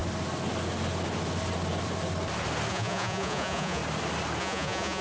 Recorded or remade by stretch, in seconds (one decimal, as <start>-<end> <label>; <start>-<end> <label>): 0.0-2.7 recorded; 2.7-3.8 remade; 3.8-4.4 recorded; 4.4-5.0 remade